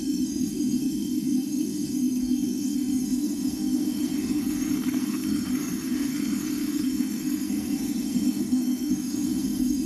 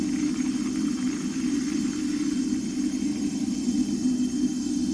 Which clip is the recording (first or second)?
second